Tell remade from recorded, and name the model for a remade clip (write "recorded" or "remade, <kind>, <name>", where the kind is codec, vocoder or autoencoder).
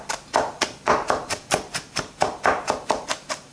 remade, vocoder, BigVGAN v2